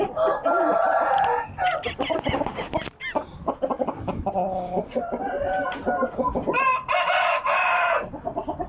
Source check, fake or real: real